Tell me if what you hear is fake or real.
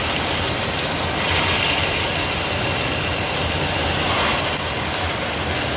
real